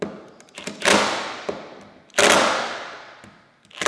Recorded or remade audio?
recorded